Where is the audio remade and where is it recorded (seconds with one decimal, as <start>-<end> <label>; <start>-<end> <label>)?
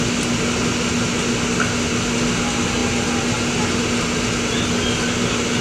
0.0-5.6 recorded